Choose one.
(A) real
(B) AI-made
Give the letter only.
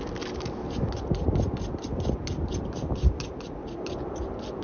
A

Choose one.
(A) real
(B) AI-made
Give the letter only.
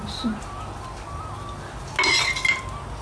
A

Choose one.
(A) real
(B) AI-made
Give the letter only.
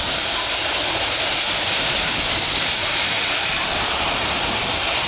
B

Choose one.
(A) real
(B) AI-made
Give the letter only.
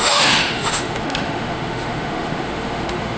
B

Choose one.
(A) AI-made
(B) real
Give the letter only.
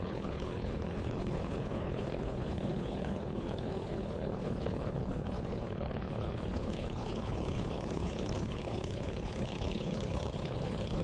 A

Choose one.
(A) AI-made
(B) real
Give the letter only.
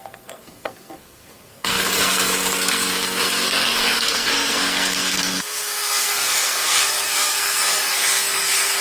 A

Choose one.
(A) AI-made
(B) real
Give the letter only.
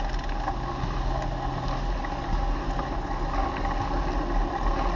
B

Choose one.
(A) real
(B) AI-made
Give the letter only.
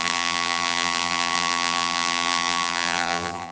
B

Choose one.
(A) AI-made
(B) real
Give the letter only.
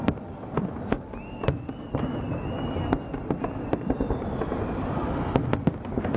B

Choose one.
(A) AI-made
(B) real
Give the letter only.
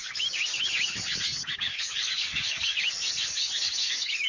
A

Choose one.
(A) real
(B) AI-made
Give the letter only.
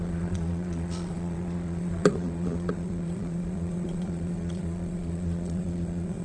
B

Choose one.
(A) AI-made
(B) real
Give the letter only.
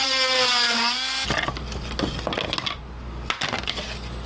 B